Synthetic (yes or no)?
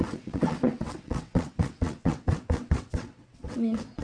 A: yes